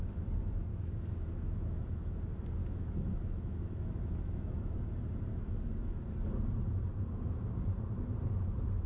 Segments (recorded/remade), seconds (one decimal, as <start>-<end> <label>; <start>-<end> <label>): 0.0-0.7 recorded; 0.7-2.1 remade; 2.1-2.6 recorded; 2.6-4.8 remade; 4.8-8.9 recorded